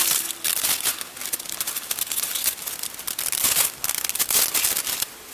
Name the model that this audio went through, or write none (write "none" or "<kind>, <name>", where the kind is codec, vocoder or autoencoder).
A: none